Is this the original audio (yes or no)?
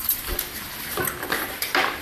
no